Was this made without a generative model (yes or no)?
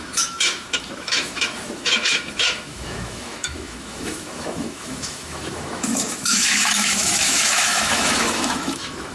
no